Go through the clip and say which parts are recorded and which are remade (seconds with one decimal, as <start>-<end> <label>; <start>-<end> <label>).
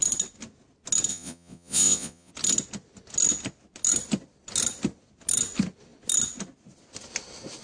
0.0-1.1 recorded; 1.1-2.3 remade; 2.3-7.6 recorded